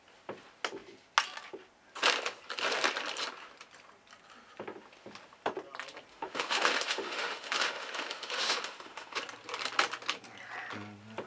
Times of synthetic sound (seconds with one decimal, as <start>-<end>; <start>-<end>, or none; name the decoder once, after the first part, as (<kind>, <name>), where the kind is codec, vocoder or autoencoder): 6.1-9.2 (autoencoder, DAC-VAE)